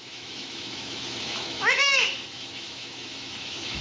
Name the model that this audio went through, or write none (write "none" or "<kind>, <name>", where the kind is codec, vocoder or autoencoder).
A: autoencoder, DAC-VAE